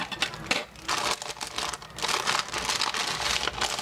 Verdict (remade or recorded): recorded